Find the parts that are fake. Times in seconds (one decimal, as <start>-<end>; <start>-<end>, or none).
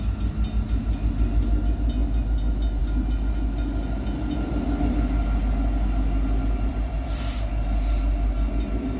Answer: none